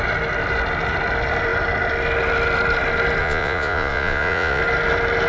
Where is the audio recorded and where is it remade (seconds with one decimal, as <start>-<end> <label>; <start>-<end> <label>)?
0.0-3.2 recorded; 3.2-4.6 remade; 4.6-5.3 recorded